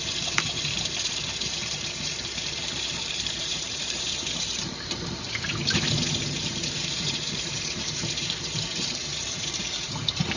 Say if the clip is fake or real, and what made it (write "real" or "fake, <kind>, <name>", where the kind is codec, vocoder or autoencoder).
fake, vocoder, BigVGAN v2